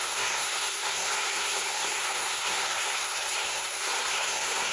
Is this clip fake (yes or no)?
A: yes